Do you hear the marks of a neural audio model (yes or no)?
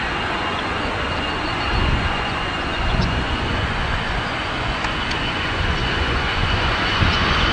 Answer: yes